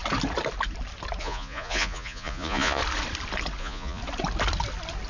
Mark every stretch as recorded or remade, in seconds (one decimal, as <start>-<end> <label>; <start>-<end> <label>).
0.0-1.2 recorded; 1.2-2.8 remade; 2.8-3.6 recorded; 3.6-4.0 remade; 4.0-5.1 recorded